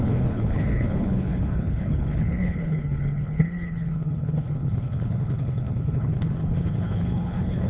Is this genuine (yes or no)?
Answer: no